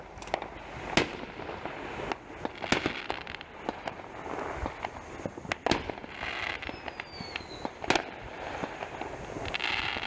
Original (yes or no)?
yes